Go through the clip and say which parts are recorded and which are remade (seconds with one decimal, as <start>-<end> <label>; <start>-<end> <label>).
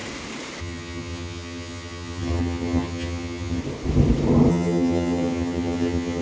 0.0-0.6 recorded; 0.6-3.6 remade; 3.6-4.5 recorded; 4.5-6.2 remade